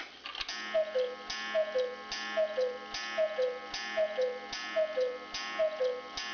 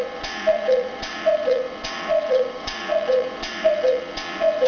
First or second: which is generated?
second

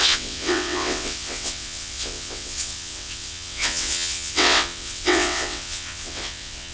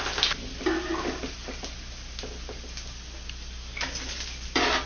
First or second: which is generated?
first